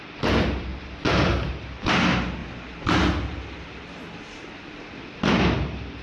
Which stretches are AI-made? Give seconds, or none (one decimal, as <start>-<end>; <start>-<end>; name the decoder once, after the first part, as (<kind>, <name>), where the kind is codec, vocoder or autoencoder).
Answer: 0.0-0.7 (vocoder, BigVGAN v2); 1.5-2.4; 5.3-6.0